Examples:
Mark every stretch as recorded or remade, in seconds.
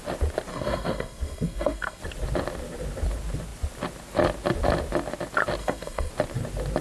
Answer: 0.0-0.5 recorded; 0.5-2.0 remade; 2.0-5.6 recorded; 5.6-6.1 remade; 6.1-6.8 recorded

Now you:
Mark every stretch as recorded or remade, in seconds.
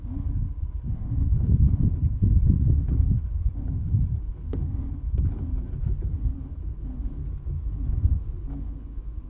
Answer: 0.0-7.2 remade; 7.2-8.1 recorded; 8.1-9.3 remade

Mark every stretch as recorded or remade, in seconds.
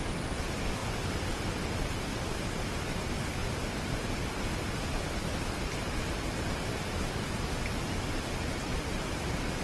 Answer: 0.0-0.8 recorded; 0.8-1.5 remade; 1.5-9.6 recorded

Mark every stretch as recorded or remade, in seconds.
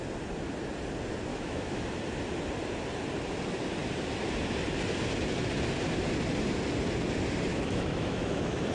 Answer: 0.0-1.3 recorded; 1.3-1.8 remade; 1.8-7.5 recorded; 7.5-8.7 remade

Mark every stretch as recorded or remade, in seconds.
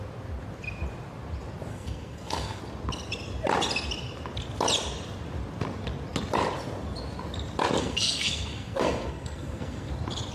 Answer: 0.0-1.7 recorded; 1.7-2.6 remade; 2.6-7.8 recorded; 7.8-9.9 remade; 9.9-10.3 recorded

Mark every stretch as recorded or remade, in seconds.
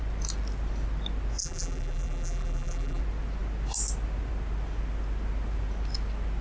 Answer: 0.0-1.4 recorded; 1.4-3.0 remade; 3.0-6.4 recorded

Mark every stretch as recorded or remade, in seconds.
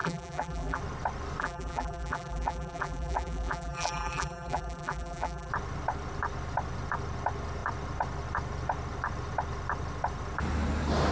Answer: 0.0-0.8 remade; 0.8-1.4 recorded; 1.4-5.5 remade; 5.5-11.1 recorded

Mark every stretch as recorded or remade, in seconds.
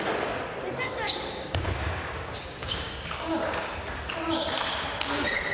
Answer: 0.0-0.8 recorded; 0.8-4.1 remade; 4.1-5.5 recorded